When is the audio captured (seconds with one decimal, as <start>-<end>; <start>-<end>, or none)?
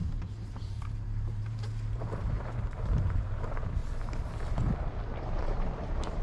3.8-5.2